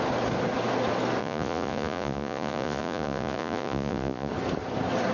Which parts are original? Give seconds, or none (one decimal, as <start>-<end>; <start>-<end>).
0.0-1.2; 4.3-5.1

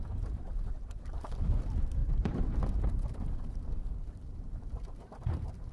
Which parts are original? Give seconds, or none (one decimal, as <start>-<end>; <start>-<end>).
none

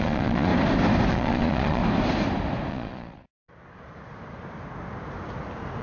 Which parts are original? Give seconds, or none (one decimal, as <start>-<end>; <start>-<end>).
0.5-1.1; 1.8-2.7; 3.2-5.8

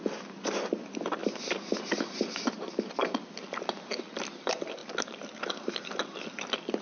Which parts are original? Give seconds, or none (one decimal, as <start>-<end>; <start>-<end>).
0.0-6.8

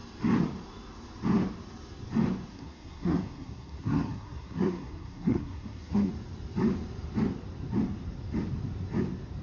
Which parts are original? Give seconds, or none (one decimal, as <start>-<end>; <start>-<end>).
0.0-2.5; 6.1-9.4

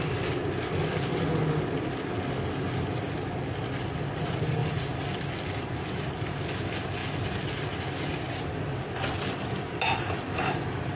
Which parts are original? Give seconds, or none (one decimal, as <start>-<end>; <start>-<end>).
0.0-11.0

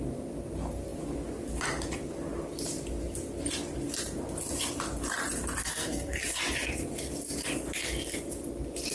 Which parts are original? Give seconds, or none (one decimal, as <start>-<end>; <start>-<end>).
0.0-5.6; 6.2-8.9